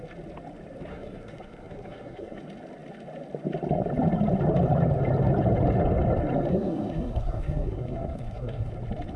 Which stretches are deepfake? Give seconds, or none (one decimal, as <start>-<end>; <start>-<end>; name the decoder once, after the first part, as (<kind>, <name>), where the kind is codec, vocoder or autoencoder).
0.9-2.4 (codec, SNAC); 6.5-8.7